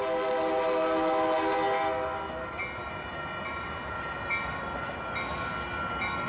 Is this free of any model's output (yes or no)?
yes